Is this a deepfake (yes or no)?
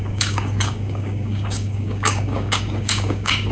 yes